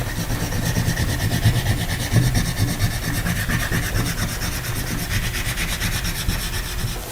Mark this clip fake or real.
real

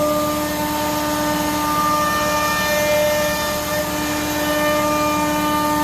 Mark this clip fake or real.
real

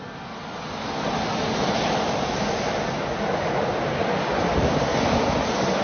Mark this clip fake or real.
real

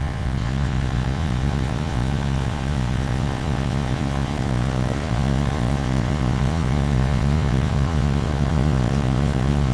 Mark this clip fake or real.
fake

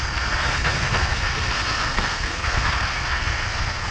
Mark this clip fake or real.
fake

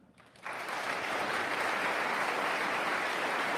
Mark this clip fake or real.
fake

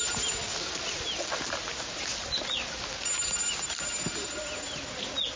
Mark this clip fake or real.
real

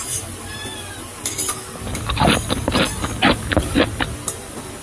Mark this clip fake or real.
real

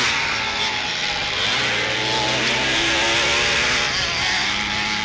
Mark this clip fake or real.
real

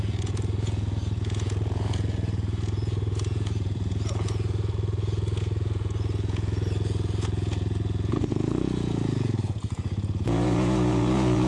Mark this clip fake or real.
fake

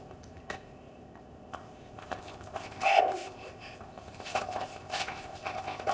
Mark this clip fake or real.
fake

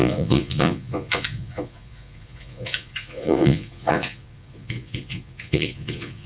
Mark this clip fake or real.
fake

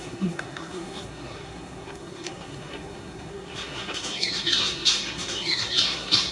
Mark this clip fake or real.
fake